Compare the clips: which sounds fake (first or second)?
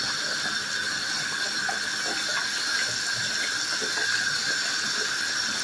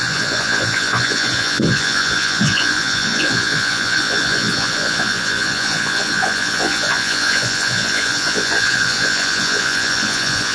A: second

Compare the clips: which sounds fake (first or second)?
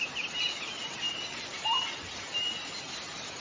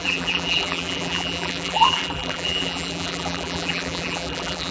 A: second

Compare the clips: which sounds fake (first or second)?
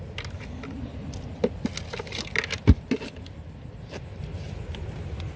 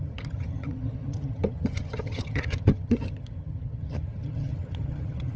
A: second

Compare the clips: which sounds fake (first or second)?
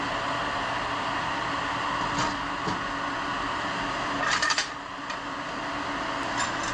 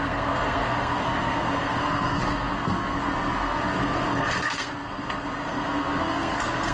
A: second